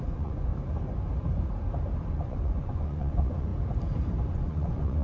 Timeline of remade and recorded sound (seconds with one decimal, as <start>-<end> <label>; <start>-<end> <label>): 0.0-0.5 remade; 0.5-2.1 recorded; 2.1-3.5 remade; 3.5-4.3 recorded; 4.3-5.0 remade